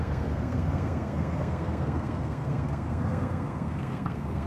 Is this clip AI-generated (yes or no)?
yes